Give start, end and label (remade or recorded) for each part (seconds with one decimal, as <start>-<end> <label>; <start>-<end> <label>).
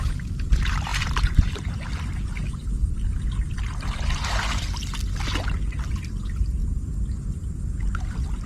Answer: 0.0-2.8 remade; 2.8-6.1 recorded; 6.1-6.6 remade; 6.6-7.9 recorded; 7.9-8.5 remade